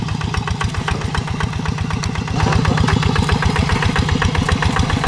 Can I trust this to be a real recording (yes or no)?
yes